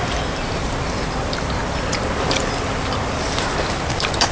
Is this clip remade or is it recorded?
remade